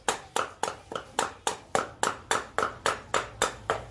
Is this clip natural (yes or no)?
yes